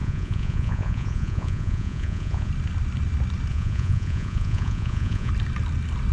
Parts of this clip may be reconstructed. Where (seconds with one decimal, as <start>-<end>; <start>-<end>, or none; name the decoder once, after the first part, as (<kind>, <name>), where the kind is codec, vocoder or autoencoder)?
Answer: 0.0-2.5 (vocoder, Vocos); 3.5-5.3